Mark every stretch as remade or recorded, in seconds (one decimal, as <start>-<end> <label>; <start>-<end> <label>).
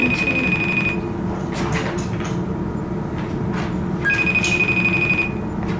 0.0-5.8 recorded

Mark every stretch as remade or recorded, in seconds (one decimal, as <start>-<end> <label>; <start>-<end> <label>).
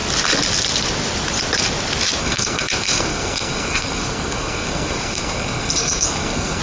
0.0-2.2 recorded; 2.2-6.6 remade